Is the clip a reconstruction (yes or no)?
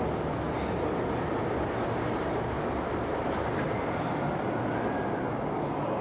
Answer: no